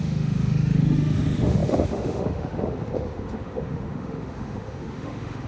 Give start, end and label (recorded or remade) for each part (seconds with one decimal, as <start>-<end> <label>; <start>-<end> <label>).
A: 0.0-5.5 remade